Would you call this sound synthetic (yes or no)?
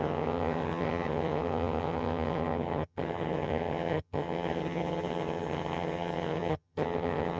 yes